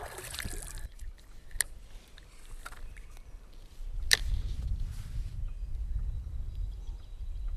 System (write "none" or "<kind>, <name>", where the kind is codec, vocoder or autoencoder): vocoder, BigVGAN v2